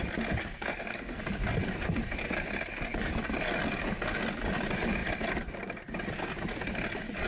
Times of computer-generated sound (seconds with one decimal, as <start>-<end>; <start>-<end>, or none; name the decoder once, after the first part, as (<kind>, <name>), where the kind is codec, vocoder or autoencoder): 0.4-1.2 (codec, SNAC)